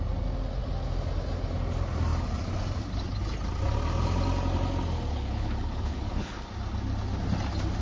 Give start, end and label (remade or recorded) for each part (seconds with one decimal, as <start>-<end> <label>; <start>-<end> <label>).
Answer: 0.0-5.1 recorded; 5.1-6.5 remade; 6.5-7.8 recorded